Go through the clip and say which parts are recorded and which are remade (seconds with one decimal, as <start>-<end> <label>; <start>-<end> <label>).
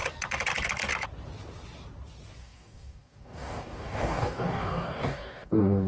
0.0-2.4 recorded; 2.4-5.9 remade